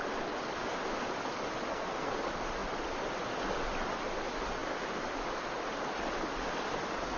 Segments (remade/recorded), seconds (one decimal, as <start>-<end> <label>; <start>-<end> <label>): 0.0-1.7 recorded; 1.7-2.2 remade; 2.2-7.2 recorded